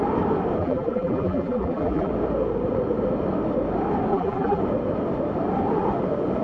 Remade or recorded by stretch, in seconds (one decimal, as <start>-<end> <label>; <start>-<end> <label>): 0.0-0.6 recorded; 0.6-2.1 remade; 2.1-4.1 recorded; 4.1-4.6 remade; 4.6-6.4 recorded